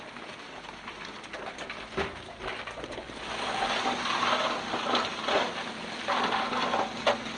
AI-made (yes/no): no